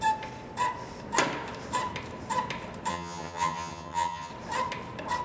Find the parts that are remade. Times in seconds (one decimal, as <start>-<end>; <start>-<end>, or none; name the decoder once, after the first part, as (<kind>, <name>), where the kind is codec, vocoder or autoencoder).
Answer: 2.9-4.3 (vocoder, HiFi-GAN)